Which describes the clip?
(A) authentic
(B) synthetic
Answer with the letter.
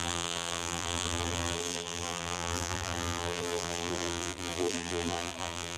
B